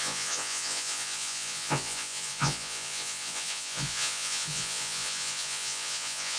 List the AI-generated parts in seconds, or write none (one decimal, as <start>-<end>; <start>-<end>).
0.0-6.4